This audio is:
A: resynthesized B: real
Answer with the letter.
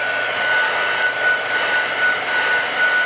B